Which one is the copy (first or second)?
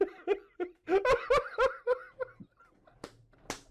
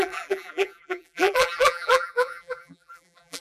second